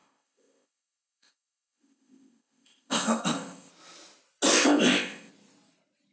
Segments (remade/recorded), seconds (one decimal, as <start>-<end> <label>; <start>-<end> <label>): 0.0-3.7 remade; 3.7-4.5 recorded; 4.5-5.3 remade; 5.3-6.1 recorded